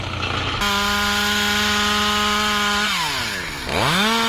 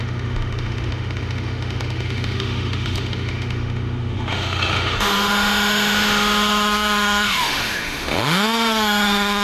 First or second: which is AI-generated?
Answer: second